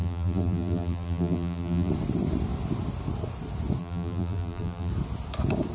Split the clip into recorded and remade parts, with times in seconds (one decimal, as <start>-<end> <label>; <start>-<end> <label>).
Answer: 0.0-1.9 remade; 1.9-3.8 recorded; 3.8-4.9 remade; 4.9-5.7 recorded